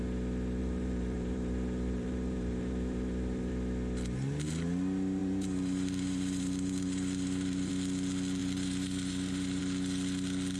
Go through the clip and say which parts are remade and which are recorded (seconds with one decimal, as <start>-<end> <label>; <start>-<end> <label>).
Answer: 0.0-0.6 recorded; 0.6-3.5 remade; 3.5-5.2 recorded; 5.2-7.7 remade; 7.7-8.4 recorded; 8.4-9.6 remade; 9.6-10.6 recorded